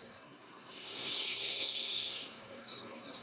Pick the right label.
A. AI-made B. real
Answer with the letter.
A